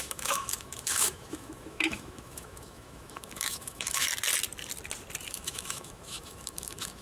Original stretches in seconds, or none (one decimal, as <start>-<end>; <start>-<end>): 4.1-5.3